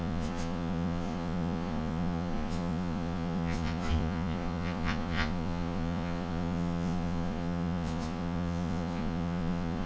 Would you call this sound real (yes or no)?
no